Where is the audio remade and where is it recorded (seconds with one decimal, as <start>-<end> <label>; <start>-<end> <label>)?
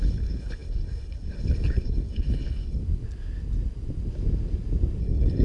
0.0-2.8 remade; 2.8-5.0 recorded; 5.0-5.4 remade